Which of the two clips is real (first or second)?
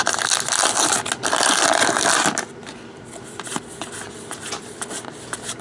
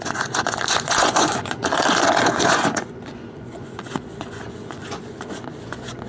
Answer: first